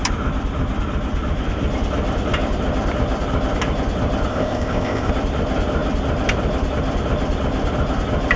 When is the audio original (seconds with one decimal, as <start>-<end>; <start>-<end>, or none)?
0.0-4.3; 5.1-8.4